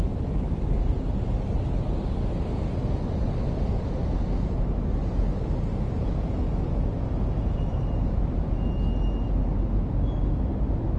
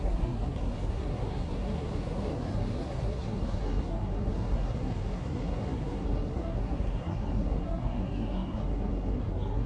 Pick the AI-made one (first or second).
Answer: second